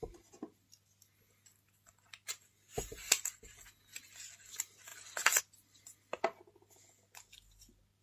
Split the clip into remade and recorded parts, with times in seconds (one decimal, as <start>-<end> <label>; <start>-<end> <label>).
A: 0.0-8.0 recorded